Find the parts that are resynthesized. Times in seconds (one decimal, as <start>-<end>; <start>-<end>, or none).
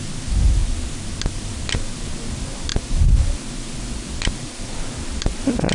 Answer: none